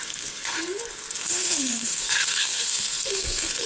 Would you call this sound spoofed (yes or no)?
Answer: yes